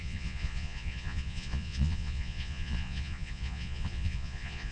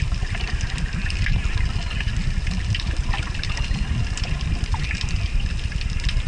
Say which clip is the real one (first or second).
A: second